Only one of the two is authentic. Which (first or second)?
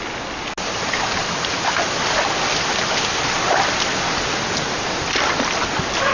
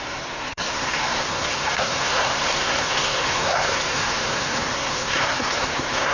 first